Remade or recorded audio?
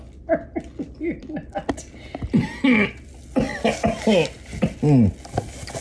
recorded